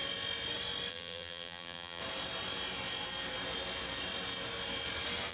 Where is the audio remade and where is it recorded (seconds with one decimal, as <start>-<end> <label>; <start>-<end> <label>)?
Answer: 0.0-0.9 recorded; 0.9-2.0 remade; 2.0-5.3 recorded